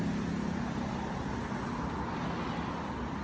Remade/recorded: recorded